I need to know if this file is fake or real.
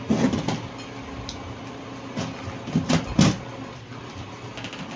real